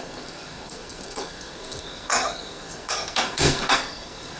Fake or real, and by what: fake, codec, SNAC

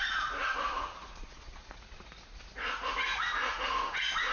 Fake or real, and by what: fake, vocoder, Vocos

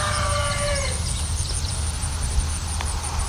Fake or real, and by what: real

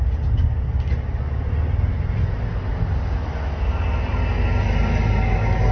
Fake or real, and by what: real